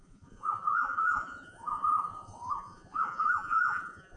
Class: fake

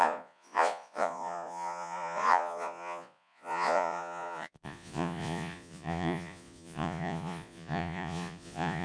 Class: fake